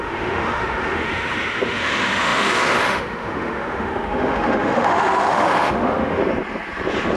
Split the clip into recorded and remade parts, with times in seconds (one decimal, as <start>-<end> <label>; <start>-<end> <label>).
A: 0.0-6.2 remade; 6.2-7.2 recorded